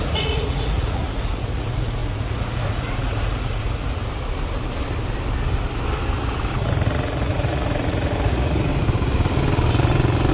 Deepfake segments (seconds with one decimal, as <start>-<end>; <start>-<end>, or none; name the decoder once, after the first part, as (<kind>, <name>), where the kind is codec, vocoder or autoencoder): 0.0-3.8 (vocoder, Vocos); 6.5-8.7

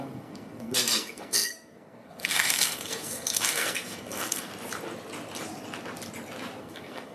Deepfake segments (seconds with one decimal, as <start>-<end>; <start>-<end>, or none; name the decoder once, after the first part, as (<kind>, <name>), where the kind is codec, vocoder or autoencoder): 0.0-4.5 (codec, SNAC); 6.6-7.1

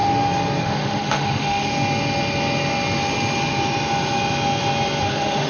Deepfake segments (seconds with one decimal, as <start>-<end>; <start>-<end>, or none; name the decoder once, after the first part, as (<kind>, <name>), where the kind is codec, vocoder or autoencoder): 0.6-1.7 (autoencoder, DAC-VAE); 5.0-5.5

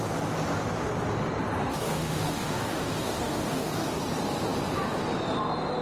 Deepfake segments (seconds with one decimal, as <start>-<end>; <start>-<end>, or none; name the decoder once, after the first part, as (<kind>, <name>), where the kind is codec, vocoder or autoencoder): 1.6-4.0 (codec, DAC)